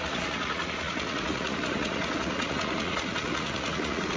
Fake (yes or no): yes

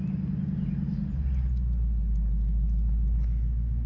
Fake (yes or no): no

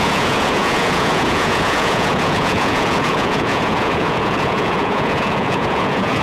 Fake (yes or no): yes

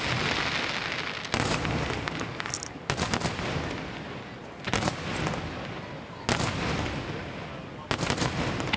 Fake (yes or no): no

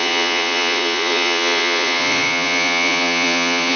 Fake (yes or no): yes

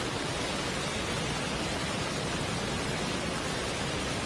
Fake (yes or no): no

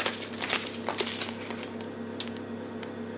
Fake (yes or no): no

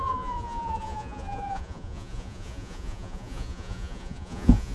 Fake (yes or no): yes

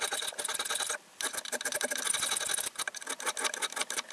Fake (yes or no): no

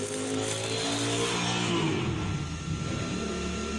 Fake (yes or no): no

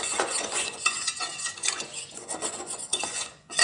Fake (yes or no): yes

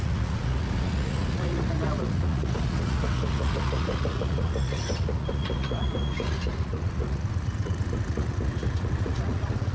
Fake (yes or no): yes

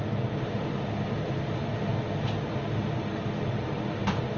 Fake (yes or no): no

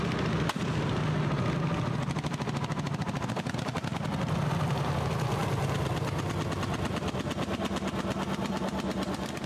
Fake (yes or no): no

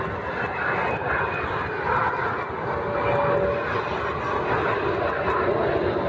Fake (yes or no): no